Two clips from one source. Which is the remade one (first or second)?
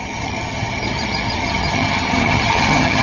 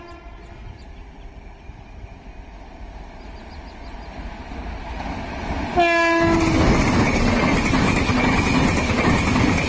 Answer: first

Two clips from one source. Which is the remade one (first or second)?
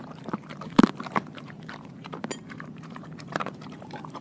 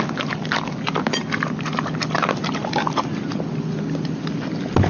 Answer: first